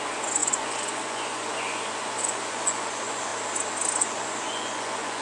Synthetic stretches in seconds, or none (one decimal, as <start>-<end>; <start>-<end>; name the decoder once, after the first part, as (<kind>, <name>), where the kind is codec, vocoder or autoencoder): 0.0-3.3 (vocoder, Vocos); 4.0-5.2